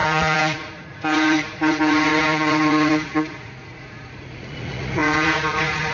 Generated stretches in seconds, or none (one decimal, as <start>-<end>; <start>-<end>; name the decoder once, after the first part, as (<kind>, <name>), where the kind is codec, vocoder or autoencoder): 0.0-5.9 (vocoder, Vocos)